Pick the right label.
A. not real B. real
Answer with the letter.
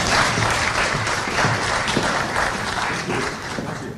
A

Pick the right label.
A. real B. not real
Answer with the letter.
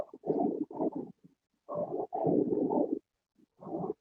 A